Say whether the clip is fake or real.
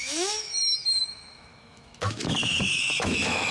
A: fake